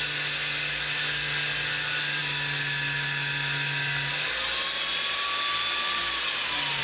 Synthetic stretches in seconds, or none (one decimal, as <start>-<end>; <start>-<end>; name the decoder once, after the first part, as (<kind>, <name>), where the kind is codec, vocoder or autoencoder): none